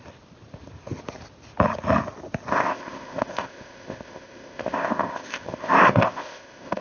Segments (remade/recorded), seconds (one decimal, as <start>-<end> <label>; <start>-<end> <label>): 0.0-2.5 recorded; 2.5-6.8 remade